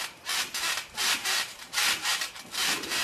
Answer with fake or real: real